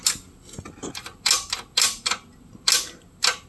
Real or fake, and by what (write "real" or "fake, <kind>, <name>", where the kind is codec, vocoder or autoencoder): real